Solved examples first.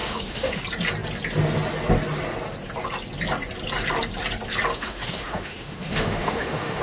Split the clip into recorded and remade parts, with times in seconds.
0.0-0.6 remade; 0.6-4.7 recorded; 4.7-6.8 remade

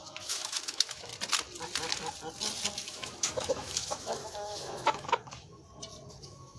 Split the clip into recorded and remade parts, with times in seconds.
0.0-1.1 remade; 1.1-2.8 recorded; 2.8-5.6 remade; 5.6-6.1 recorded; 6.1-6.6 remade

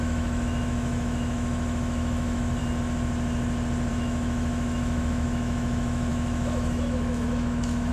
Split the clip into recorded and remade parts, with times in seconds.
0.0-2.6 remade; 2.6-3.9 recorded; 3.9-7.9 remade

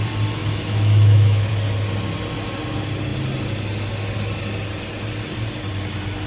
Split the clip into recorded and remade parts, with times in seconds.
0.0-0.4 recorded; 0.4-1.5 remade; 1.5-6.3 recorded

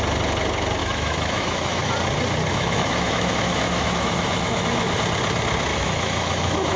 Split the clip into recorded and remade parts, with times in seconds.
0.0-0.8 recorded; 0.8-1.9 remade; 1.9-2.5 recorded; 2.5-5.0 remade; 5.0-5.7 recorded; 5.7-6.8 remade

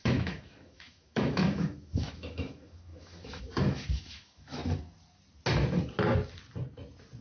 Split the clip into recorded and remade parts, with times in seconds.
0.0-4.6 remade; 4.6-7.2 recorded

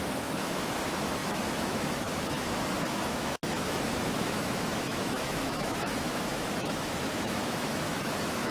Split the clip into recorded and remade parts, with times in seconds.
0.0-8.5 remade